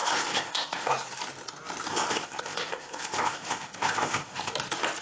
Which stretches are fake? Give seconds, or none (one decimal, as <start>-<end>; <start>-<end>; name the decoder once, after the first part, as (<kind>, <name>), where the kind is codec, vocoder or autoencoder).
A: 0.0-0.9 (codec, ZipCodec); 1.9-4.5